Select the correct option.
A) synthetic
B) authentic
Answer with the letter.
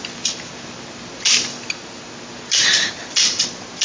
B